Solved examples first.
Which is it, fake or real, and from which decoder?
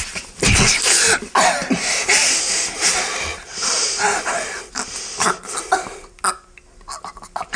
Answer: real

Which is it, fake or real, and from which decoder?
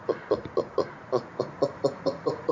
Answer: fake, vocoder, Vocos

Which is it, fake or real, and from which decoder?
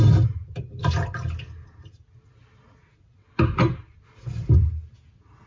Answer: real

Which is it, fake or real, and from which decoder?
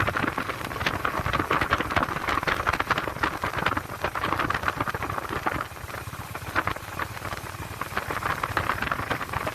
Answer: real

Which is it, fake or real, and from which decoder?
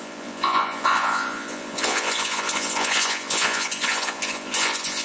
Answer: fake, vocoder, Vocos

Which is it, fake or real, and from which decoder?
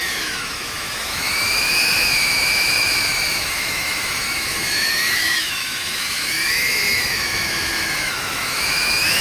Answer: fake, autoencoder, DAC-VAE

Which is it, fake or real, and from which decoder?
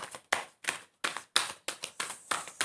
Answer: real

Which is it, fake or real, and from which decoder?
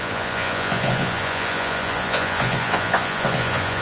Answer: fake, vocoder, Vocos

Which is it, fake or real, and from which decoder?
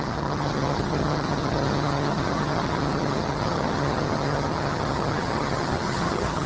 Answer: fake, vocoder, HiFi-GAN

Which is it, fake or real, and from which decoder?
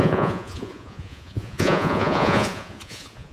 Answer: fake, vocoder, Vocos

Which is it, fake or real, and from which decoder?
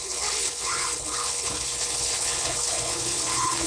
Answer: fake, codec, HILCodec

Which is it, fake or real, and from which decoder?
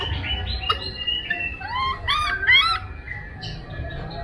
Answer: real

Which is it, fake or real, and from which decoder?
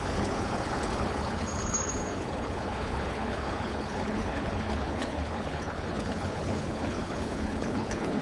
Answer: fake, codec, HILCodec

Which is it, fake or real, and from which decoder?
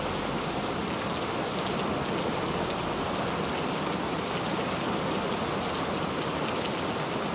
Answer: real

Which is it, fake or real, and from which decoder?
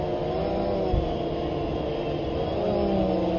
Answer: real